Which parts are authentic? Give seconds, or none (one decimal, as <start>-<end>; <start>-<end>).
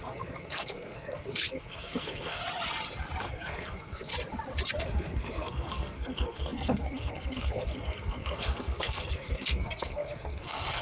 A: 2.4-3.2; 4.1-4.8